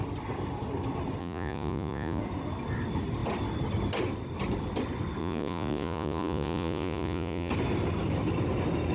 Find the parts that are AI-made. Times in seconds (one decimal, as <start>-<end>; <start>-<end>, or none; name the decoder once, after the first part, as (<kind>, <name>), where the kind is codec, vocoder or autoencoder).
1.2-2.2 (vocoder, Vocos); 5.2-7.5